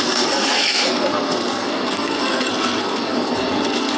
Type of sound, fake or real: fake